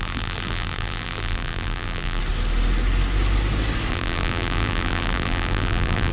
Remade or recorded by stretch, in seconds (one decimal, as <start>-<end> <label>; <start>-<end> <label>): 0.0-2.2 remade; 2.2-3.9 recorded; 3.9-6.1 remade